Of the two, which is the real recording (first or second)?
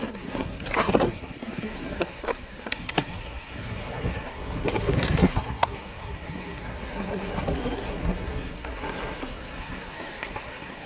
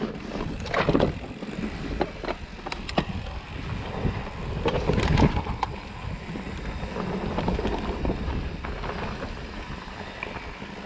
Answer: second